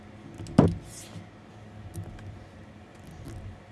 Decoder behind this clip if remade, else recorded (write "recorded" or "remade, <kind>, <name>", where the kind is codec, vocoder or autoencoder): recorded